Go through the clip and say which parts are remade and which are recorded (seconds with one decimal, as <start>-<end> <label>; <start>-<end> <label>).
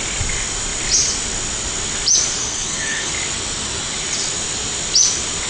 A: 0.0-2.4 recorded; 2.4-3.1 remade; 3.1-5.5 recorded